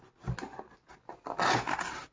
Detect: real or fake real